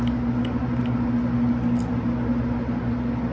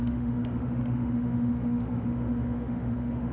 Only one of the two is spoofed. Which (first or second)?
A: second